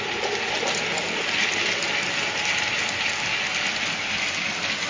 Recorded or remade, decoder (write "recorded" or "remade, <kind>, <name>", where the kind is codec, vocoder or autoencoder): recorded